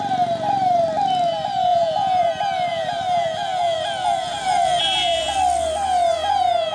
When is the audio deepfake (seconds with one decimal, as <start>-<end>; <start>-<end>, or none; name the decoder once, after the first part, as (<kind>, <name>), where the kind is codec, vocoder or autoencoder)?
1.7-2.3 (vocoder, Vocos); 2.7-5.4